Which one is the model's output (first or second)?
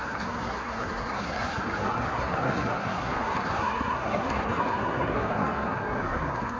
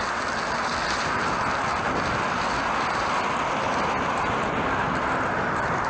first